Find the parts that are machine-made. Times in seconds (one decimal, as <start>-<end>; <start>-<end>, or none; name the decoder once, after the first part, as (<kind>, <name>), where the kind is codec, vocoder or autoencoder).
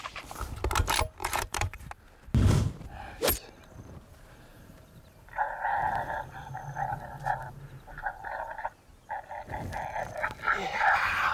1.2-1.8 (vocoder, BigVGAN v2); 4.5-8.5